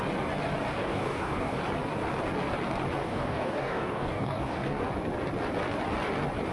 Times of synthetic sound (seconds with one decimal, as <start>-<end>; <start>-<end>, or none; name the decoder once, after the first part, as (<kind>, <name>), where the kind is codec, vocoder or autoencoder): 0.8-1.6 (codec, DAC); 3.0-4.8